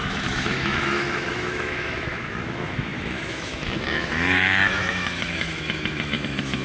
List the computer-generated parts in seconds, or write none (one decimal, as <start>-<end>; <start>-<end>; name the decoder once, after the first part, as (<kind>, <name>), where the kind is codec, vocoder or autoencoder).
0.0-6.6 (autoencoder, DAC-VAE)